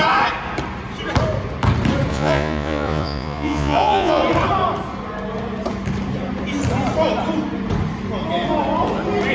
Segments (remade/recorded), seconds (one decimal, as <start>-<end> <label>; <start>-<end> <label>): 0.0-2.1 recorded; 2.1-4.2 remade; 4.2-9.3 recorded